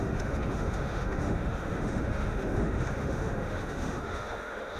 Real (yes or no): no